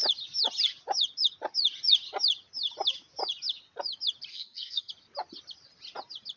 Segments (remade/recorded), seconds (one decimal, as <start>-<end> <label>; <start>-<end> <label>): 0.0-4.3 recorded; 4.3-4.9 remade; 4.9-6.4 recorded